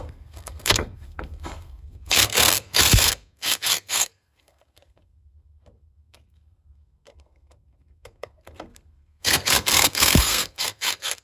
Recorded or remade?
remade